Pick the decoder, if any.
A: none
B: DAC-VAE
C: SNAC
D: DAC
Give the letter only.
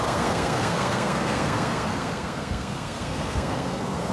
C